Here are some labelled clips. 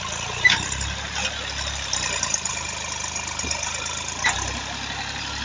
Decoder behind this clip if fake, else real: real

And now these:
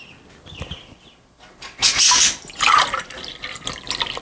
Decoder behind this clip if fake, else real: real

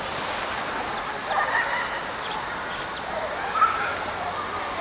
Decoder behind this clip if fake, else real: real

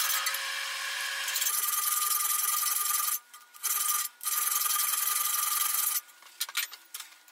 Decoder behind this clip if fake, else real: real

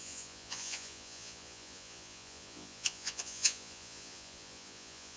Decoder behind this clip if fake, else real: fake, vocoder, Vocos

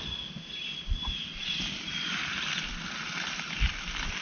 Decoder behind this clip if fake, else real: real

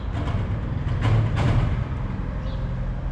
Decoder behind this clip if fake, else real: real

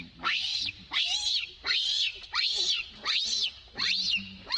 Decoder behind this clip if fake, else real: real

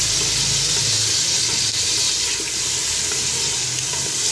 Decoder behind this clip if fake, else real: real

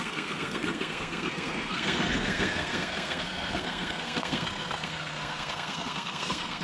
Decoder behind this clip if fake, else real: fake, codec, SNAC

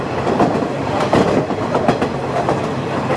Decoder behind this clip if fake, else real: real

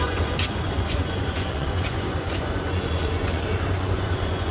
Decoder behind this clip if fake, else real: fake, vocoder, Vocos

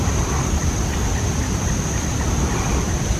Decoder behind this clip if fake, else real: real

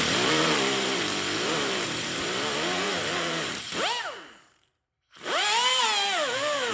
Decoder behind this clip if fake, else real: fake, vocoder, BigVGAN v2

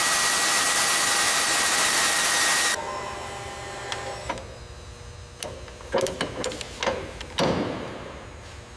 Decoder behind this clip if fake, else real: real